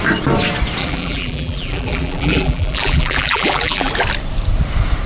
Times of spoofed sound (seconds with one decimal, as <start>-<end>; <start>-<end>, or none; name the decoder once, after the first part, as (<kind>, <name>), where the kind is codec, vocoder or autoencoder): 0.8-3.9 (vocoder, BigVGAN v2)